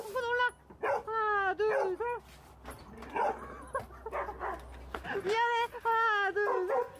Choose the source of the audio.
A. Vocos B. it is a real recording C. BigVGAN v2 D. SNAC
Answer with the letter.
B